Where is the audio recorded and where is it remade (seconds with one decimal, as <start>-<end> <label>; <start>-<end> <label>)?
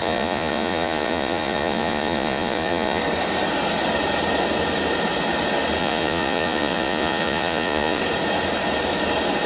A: 0.0-3.0 remade; 3.0-5.8 recorded; 5.8-8.0 remade; 8.0-9.5 recorded